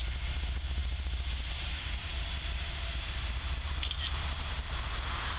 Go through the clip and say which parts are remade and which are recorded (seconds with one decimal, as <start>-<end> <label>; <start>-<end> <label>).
0.0-5.4 recorded